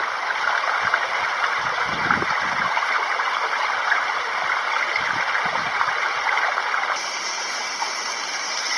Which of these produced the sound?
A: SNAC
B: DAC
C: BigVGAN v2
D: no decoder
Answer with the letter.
D